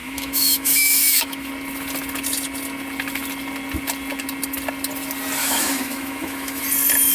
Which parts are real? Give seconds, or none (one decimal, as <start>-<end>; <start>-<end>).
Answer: 1.5-5.4; 6.6-7.1